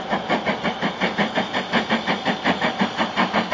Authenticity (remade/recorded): recorded